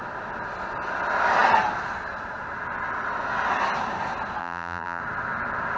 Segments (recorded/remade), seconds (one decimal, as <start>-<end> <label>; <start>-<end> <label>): 0.0-4.4 recorded; 4.4-5.0 remade; 5.0-5.8 recorded